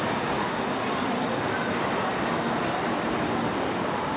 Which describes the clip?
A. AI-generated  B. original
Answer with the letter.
B